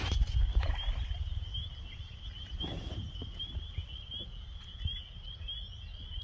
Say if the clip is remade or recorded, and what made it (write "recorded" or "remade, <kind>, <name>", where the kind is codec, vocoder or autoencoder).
recorded